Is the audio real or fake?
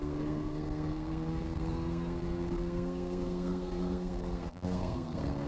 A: fake